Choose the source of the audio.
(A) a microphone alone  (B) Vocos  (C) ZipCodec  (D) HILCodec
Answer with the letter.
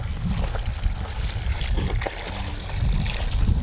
A